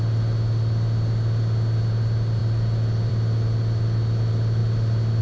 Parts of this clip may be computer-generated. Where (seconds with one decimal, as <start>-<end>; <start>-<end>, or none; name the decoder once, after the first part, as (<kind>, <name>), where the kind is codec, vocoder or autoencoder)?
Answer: none